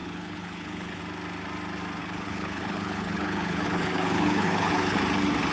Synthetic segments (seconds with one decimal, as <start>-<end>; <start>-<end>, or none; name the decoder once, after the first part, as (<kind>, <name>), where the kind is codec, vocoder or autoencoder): 0.0-1.0 (codec, HILCodec); 2.0-5.0